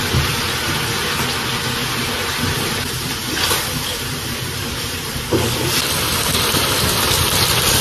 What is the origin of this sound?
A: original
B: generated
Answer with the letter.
B